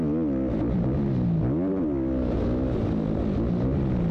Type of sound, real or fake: real